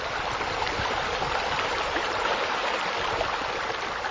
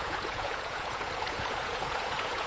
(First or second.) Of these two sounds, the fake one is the second